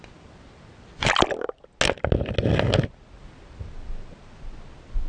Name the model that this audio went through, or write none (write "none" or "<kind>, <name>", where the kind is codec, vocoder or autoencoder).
none